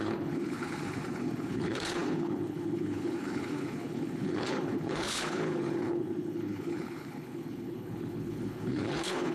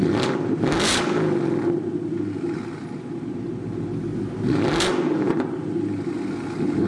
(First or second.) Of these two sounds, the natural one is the second